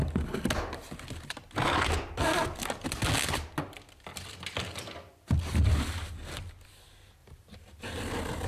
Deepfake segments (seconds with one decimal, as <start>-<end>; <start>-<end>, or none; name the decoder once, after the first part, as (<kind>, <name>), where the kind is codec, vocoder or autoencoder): 7.2-8.0 (vocoder, BigVGAN v2)